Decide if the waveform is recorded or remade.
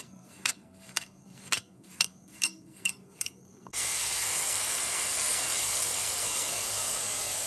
remade